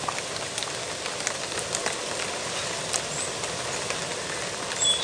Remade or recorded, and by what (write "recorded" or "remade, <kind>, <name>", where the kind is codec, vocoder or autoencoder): recorded